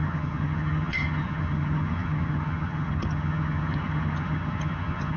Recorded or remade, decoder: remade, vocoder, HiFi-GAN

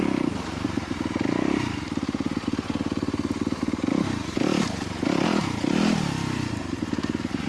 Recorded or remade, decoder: recorded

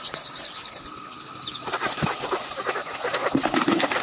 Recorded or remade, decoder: recorded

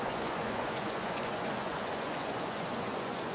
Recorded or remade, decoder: remade, vocoder, Vocos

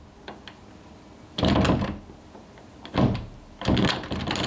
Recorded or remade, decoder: recorded